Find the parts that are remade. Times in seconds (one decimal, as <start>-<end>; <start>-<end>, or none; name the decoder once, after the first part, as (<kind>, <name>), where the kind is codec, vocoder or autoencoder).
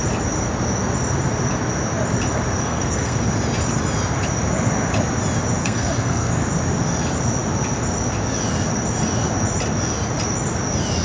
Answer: 2.6-3.3 (codec, SNAC); 5.6-6.4